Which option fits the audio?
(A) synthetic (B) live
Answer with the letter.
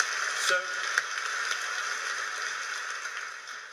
B